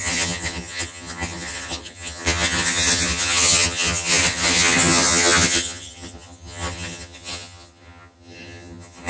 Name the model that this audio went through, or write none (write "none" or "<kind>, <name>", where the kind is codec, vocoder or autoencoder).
vocoder, HiFi-GAN